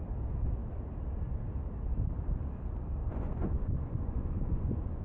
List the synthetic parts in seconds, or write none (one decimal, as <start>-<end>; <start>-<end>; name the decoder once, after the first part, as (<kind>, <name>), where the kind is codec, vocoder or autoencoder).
3.0-5.0 (vocoder, Vocos)

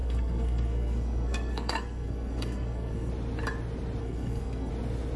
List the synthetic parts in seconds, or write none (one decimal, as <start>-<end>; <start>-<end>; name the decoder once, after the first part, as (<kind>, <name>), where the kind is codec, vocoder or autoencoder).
0.0-3.1 (codec, SNAC); 4.0-4.7

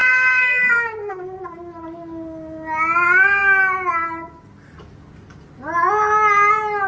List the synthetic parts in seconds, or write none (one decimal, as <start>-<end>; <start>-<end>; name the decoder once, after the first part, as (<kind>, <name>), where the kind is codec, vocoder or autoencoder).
0.0-1.4 (codec, SNAC)

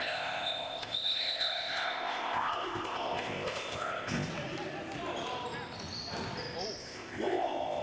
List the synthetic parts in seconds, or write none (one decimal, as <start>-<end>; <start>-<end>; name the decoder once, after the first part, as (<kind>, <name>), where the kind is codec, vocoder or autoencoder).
0.0-4.3 (codec, ZipCodec); 6.8-7.8

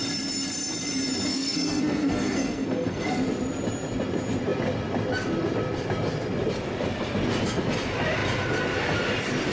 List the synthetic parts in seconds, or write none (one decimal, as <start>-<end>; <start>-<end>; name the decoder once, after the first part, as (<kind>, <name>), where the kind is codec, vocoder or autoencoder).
1.3-3.1 (codec, SNAC)

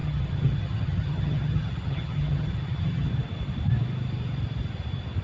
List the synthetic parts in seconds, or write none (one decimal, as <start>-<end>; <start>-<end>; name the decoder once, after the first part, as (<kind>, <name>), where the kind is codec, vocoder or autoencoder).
0.0-3.1 (vocoder, HiFi-GAN)

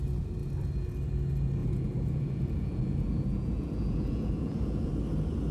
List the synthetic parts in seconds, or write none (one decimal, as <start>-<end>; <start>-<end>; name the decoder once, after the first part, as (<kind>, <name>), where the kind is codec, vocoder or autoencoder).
1.6-4.9 (vocoder, Vocos)